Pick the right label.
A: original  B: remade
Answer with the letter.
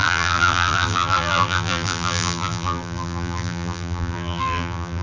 B